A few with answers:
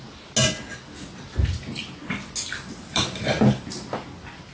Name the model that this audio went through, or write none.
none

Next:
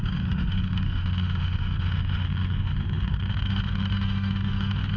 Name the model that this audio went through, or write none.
autoencoder, DAC-VAE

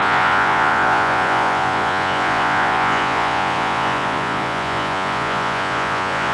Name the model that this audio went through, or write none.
vocoder, Vocos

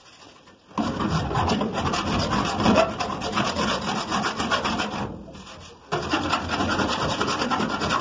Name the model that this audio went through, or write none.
none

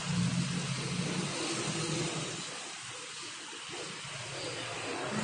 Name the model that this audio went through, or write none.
none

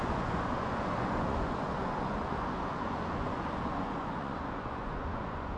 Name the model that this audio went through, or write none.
vocoder, Vocos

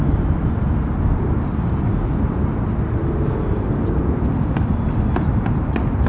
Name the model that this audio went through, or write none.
none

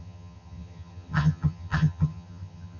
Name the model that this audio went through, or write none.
vocoder, HiFi-GAN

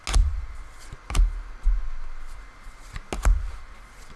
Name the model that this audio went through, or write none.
none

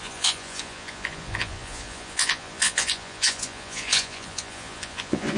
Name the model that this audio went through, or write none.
vocoder, Vocos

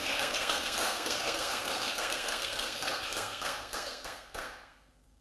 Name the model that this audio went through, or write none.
codec, SNAC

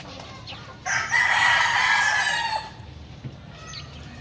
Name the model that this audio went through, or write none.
none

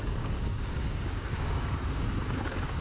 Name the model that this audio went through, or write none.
codec, DAC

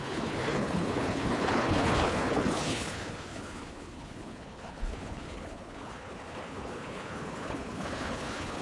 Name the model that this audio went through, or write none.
codec, HILCodec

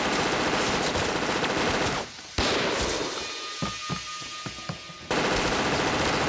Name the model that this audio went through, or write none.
none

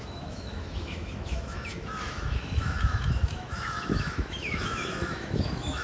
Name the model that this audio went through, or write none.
autoencoder, DAC-VAE